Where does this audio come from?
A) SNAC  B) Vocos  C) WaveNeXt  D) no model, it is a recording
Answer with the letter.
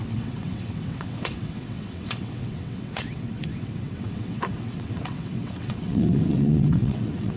C